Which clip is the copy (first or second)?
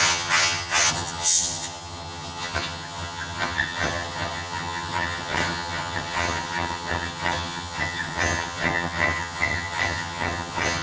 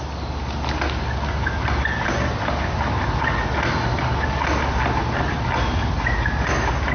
first